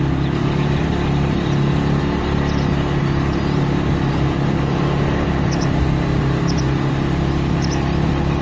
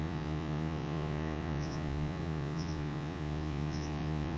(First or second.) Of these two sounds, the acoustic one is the first